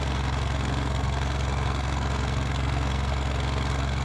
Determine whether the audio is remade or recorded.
remade